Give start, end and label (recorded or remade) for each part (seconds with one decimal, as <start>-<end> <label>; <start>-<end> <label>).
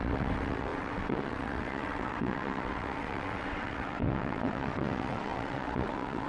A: 0.0-6.3 remade